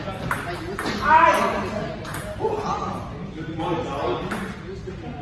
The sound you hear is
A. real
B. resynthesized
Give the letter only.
A